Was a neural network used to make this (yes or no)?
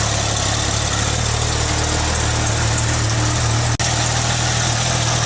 no